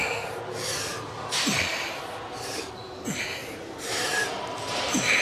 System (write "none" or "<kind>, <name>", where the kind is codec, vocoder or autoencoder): none